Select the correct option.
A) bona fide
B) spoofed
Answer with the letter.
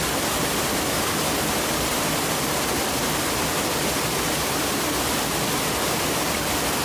A